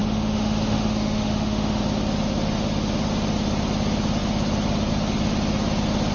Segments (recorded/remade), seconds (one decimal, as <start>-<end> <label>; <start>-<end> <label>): 0.0-1.8 remade; 1.8-6.1 recorded

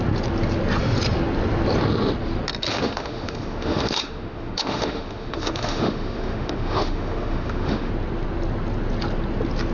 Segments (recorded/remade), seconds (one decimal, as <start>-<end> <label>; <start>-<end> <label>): 0.0-2.7 recorded; 2.7-7.9 remade; 7.9-9.7 recorded

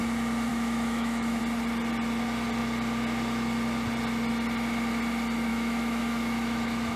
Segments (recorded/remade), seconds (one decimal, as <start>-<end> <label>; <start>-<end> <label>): 0.0-0.5 recorded; 0.5-1.4 remade; 1.4-5.5 recorded; 5.5-7.0 remade

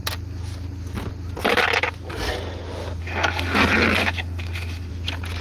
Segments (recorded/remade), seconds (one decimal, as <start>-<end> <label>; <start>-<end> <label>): 0.0-3.0 recorded; 3.0-3.6 remade; 3.6-4.0 recorded; 4.0-4.9 remade; 4.9-5.4 recorded

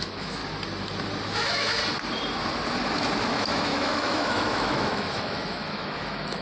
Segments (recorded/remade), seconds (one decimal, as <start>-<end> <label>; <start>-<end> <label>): 0.0-0.4 remade; 0.4-1.3 recorded; 1.3-1.8 remade; 1.8-3.3 recorded; 3.3-6.4 remade

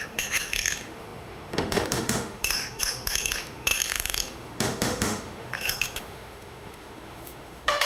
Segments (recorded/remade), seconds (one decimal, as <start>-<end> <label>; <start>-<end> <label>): 0.0-7.9 remade